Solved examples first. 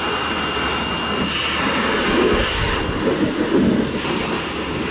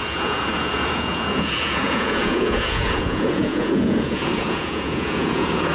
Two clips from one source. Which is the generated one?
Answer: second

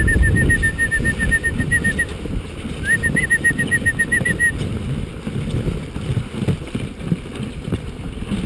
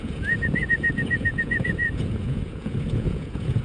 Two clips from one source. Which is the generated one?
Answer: second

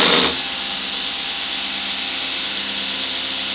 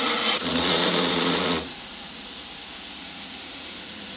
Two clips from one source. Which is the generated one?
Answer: second